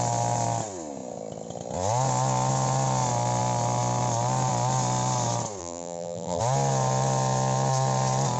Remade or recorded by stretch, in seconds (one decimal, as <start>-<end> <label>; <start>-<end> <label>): 0.0-5.6 recorded; 5.6-6.4 remade; 6.4-8.4 recorded